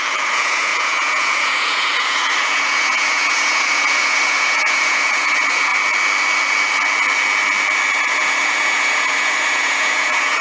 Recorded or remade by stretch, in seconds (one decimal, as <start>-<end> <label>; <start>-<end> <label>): 0.0-5.7 remade; 5.7-8.0 recorded; 8.0-10.4 remade